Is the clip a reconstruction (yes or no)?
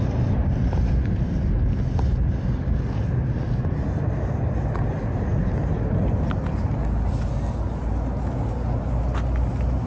no